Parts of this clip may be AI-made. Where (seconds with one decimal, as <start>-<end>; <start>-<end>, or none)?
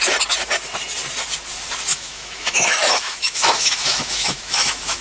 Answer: 1.9-5.0